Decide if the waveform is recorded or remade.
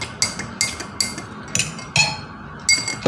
recorded